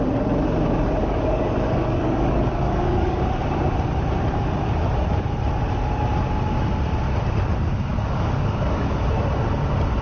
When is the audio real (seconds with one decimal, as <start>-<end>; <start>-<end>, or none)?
0.0-1.0; 3.2-7.9; 9.0-10.0